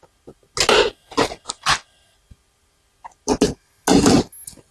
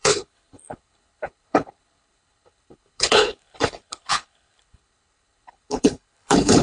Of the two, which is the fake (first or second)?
second